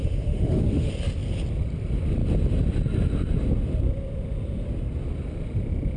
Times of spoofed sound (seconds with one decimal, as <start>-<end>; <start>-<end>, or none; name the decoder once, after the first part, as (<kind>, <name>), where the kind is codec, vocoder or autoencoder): 0.0-0.9 (autoencoder, DAC-VAE)